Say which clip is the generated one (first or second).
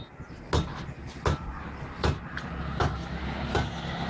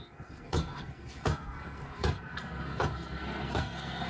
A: second